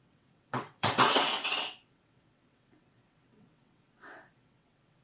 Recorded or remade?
remade